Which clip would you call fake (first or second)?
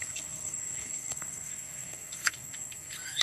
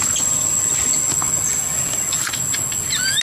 first